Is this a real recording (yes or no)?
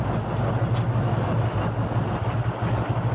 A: yes